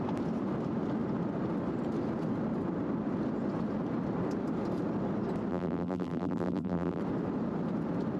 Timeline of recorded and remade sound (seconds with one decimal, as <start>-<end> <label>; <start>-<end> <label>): 0.0-5.5 recorded; 5.5-7.0 remade; 7.0-8.2 recorded